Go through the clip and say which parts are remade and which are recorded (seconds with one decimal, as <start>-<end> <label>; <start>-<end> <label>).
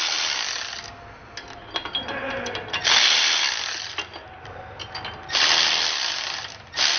0.0-7.0 recorded